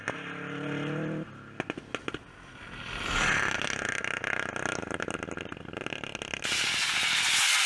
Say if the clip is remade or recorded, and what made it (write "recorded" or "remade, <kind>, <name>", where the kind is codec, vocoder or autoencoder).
recorded